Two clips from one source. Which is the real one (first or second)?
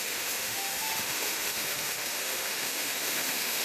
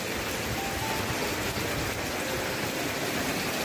second